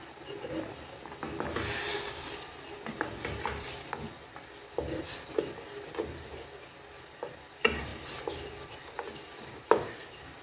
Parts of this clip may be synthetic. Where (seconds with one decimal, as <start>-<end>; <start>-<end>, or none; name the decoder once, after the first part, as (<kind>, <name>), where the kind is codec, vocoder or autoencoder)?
none